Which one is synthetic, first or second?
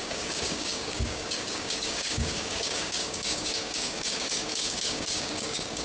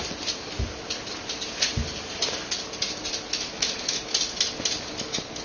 first